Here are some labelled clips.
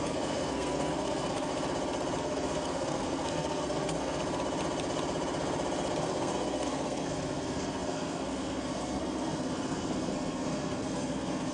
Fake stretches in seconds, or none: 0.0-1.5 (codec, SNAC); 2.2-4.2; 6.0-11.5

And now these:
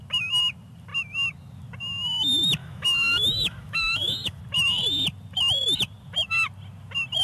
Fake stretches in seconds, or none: 2.6-4.4 (autoencoder, DAC-VAE)